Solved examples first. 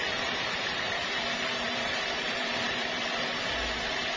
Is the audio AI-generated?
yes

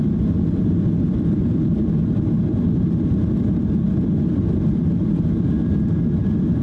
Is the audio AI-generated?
no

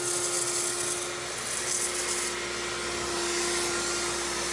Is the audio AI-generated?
no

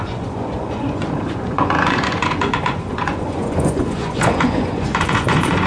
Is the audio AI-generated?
yes